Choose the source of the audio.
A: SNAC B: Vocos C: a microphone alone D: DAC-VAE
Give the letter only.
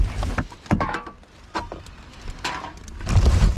C